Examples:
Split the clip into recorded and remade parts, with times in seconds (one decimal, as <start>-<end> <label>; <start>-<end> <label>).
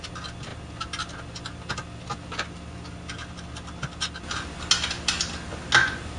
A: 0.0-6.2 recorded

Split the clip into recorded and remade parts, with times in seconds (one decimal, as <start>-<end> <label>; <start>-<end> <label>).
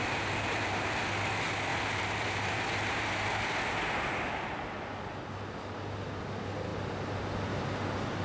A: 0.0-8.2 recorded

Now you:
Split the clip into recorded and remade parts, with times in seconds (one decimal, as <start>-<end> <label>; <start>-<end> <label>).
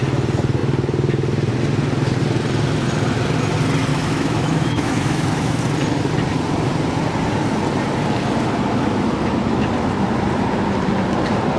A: 0.0-3.9 recorded; 3.9-5.6 remade; 5.6-11.6 recorded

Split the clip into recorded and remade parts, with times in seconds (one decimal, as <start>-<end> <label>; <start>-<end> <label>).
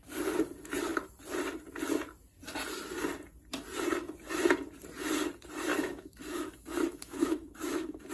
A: 0.0-5.7 recorded; 5.7-8.1 remade